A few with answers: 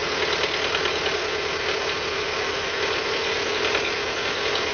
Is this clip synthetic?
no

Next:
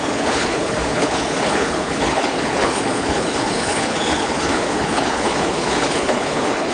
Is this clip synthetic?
yes